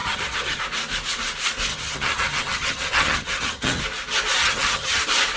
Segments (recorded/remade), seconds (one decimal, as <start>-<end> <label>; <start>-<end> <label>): 0.0-0.6 remade; 0.6-1.7 recorded; 1.7-3.8 remade; 3.8-4.4 recorded; 4.4-5.0 remade; 5.0-5.4 recorded